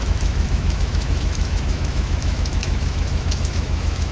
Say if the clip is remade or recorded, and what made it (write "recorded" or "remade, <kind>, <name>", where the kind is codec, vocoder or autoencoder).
remade, autoencoder, DAC-VAE